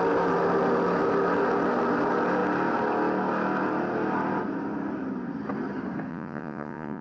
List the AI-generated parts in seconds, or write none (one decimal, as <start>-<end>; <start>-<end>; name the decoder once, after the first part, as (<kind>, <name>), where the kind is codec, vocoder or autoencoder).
6.1-7.0 (vocoder, Vocos)